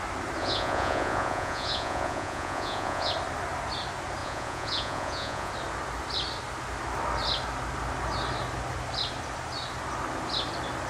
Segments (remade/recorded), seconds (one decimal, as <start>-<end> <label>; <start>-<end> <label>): 0.0-0.4 recorded; 0.4-3.1 remade; 3.1-4.2 recorded; 4.2-5.5 remade; 5.5-10.9 recorded